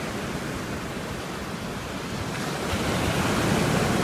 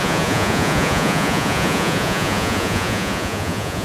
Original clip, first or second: first